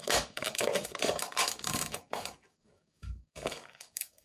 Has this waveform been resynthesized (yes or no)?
yes